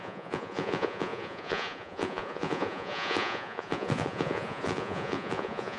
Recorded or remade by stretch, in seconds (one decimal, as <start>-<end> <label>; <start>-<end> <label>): 0.0-5.8 remade